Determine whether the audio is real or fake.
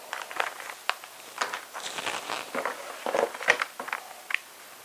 real